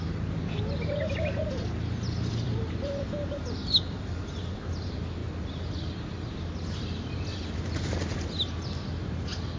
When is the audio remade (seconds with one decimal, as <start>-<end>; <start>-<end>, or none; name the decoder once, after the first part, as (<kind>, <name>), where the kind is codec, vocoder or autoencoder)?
2.3-4.6 (vocoder, BigVGAN v2)